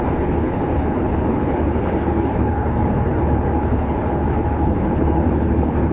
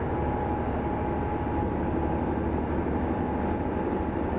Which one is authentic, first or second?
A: second